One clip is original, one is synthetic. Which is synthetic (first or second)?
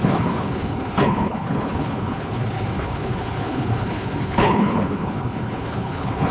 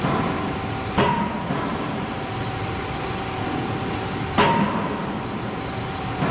first